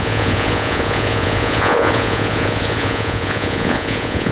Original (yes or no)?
no